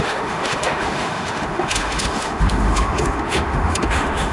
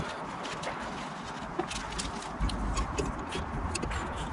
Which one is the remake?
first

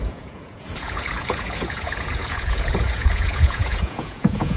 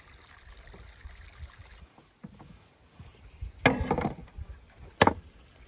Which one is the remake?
first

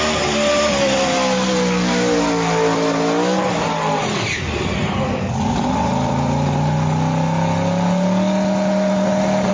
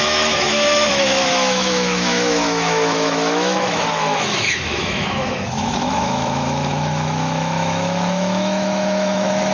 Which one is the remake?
second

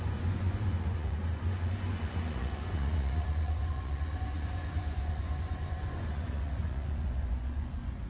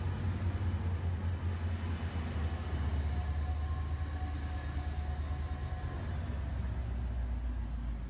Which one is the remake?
first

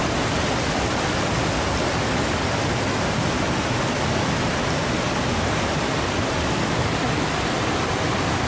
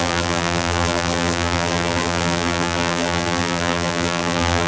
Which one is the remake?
second